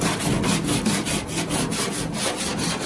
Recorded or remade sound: recorded